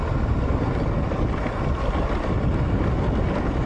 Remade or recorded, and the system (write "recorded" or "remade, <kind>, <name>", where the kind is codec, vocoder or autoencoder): recorded